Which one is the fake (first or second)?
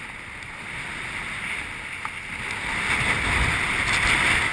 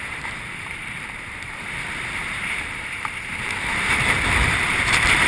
second